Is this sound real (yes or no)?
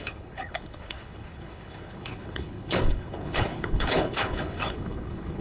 no